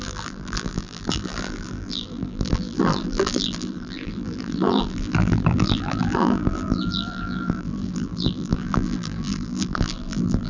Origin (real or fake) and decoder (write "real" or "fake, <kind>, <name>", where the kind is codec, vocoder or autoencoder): fake, vocoder, BigVGAN v2